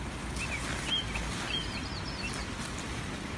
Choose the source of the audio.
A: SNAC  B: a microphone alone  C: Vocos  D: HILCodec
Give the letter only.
B